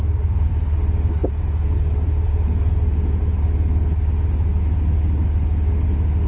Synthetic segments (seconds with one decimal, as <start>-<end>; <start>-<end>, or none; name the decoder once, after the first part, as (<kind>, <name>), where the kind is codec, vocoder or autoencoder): 1.2-3.2 (vocoder, Vocos)